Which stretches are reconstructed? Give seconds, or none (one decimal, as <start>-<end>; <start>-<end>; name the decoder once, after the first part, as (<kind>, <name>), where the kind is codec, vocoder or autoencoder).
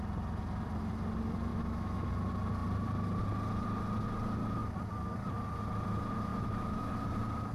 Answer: 1.5-2.1 (autoencoder, DAC-VAE); 6.3-6.9